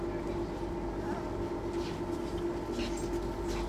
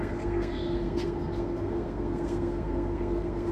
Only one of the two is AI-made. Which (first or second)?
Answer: second